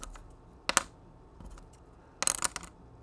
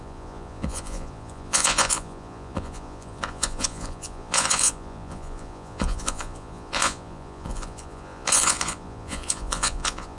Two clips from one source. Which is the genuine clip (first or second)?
first